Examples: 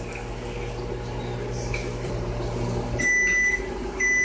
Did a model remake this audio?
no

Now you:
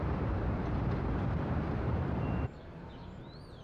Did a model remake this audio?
yes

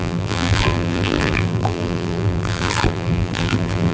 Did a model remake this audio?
yes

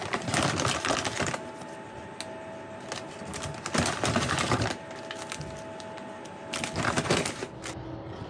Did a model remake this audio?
no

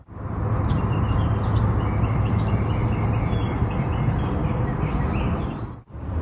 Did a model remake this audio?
no